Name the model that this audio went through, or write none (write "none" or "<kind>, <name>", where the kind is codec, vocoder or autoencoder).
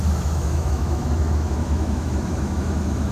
autoencoder, DAC-VAE